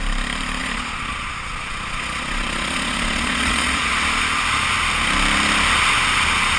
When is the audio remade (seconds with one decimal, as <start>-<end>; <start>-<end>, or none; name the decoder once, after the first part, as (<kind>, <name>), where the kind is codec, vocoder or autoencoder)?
0.6-3.9 (vocoder, Vocos)